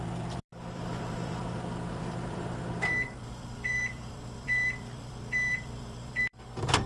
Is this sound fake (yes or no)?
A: yes